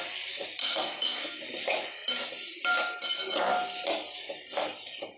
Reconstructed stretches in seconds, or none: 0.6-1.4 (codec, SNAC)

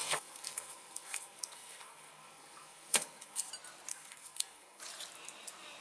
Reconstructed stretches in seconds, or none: 0.0-3.5 (codec, SNAC); 3.9-4.8

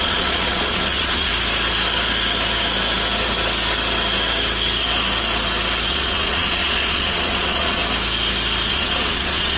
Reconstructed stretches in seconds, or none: 0.0-1.3 (vocoder, Vocos); 5.9-7.8; 8.7-9.6

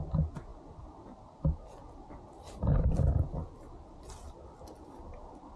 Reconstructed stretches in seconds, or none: none

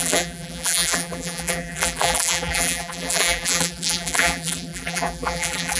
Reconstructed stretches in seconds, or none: 0.0-5.8 (vocoder, BigVGAN v2)

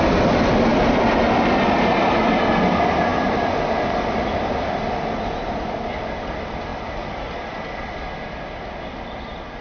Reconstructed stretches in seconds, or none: none